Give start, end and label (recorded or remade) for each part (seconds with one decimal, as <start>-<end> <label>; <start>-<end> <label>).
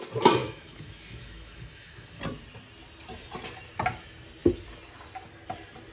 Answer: 0.0-0.4 recorded; 0.4-2.2 remade; 2.2-5.9 recorded